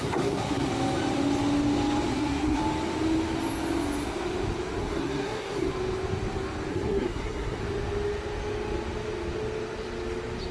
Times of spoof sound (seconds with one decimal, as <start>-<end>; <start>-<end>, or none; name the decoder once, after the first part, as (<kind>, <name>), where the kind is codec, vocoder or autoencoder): 0.0-0.7 (codec, SNAC); 2.1-2.6; 4.8-5.7; 6.7-7.6